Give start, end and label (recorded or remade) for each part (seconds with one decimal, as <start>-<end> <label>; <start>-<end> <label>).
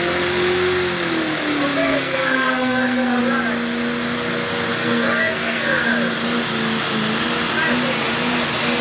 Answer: 0.0-1.8 recorded; 1.8-3.2 remade; 3.2-4.7 recorded; 4.7-5.9 remade; 5.9-8.8 recorded